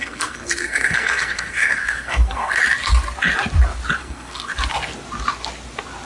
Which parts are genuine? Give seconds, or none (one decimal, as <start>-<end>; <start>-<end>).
2.6-4.0; 4.5-6.1